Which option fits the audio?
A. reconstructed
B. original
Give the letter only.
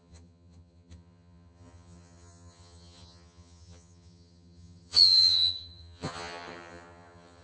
A